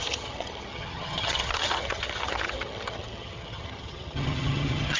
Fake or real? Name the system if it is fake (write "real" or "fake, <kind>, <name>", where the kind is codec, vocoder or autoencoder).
fake, vocoder, HiFi-GAN